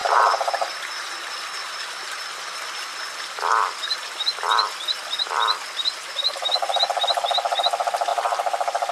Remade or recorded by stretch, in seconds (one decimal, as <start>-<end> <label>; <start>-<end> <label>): 0.0-0.5 remade; 0.5-6.3 recorded; 6.3-7.1 remade; 7.1-8.9 recorded